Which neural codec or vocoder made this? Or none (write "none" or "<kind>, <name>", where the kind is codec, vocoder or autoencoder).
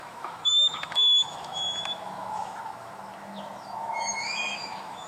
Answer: autoencoder, DAC-VAE